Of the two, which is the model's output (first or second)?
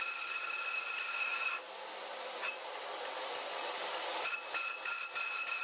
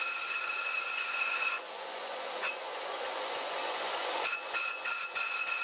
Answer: second